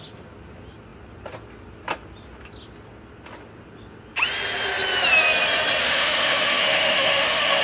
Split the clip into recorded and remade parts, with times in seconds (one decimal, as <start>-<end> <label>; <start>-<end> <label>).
0.0-5.8 recorded; 5.8-7.6 remade